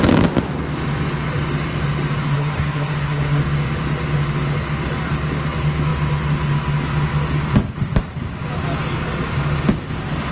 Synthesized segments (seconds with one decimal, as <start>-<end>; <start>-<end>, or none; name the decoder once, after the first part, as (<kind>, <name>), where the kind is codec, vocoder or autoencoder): 2.3-3.4 (codec, SNAC)